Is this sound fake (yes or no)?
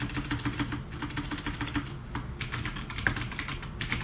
no